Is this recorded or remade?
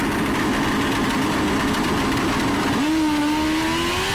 recorded